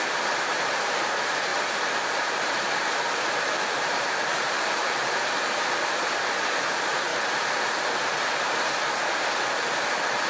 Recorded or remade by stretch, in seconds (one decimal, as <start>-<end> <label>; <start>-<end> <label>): 0.0-1.5 remade; 1.5-2.3 recorded; 2.3-7.1 remade; 7.1-9.5 recorded; 9.5-10.3 remade